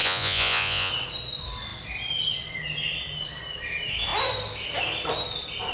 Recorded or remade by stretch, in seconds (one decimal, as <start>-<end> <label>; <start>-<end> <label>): 0.0-0.9 remade; 0.9-5.7 recorded